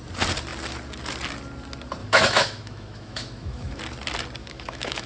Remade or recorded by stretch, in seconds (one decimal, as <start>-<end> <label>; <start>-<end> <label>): 0.0-2.0 recorded; 2.0-3.8 remade; 3.8-4.4 recorded; 4.4-5.1 remade